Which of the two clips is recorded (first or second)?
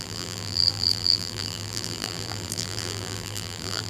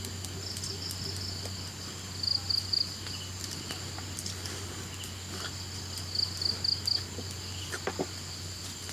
second